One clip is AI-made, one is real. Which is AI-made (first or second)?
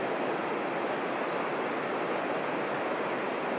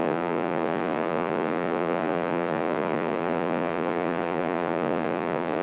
second